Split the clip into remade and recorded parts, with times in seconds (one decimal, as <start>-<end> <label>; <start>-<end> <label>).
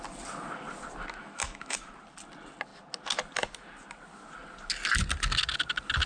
0.0-1.2 recorded; 1.2-1.8 remade; 1.8-6.1 recorded